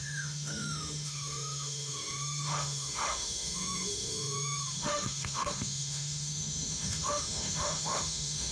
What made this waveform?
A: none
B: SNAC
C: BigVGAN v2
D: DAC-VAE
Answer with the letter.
D